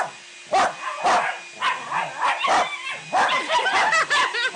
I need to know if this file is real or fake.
real